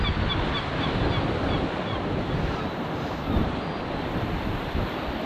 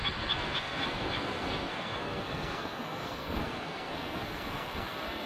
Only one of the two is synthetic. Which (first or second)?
second